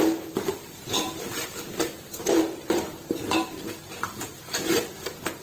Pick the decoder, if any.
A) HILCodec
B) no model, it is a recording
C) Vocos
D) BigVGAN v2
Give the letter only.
D